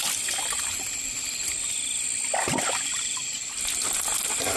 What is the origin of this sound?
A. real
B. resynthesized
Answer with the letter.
A